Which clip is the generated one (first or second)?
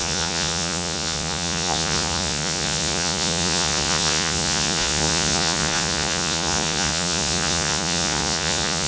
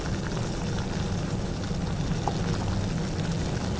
first